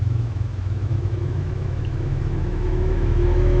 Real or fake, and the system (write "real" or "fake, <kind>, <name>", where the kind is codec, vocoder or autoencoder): fake, autoencoder, DAC-VAE